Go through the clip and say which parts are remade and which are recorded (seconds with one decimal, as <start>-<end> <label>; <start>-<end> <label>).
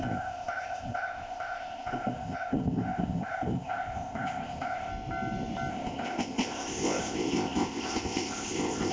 0.0-4.9 remade; 4.9-5.7 recorded; 5.7-8.9 remade